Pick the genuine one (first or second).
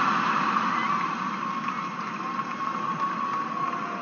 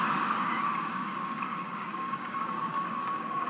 first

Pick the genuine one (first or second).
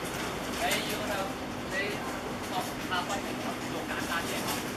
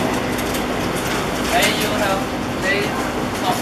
second